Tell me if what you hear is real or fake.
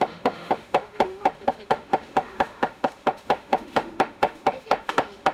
fake